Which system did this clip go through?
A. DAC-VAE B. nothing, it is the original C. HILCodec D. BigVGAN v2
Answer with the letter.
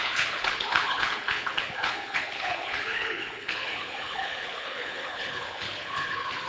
C